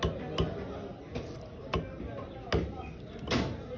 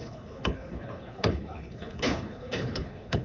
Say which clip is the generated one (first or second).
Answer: second